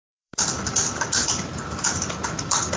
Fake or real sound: fake